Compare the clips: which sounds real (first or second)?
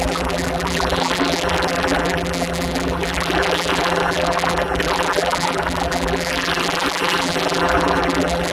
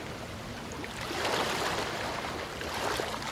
second